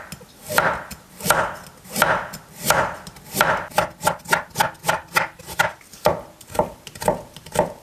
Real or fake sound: real